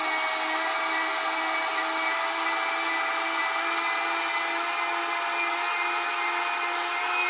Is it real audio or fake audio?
real